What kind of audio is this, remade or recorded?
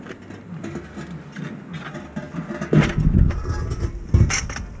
recorded